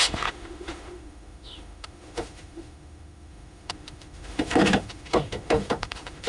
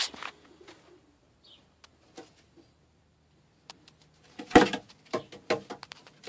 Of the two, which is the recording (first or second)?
second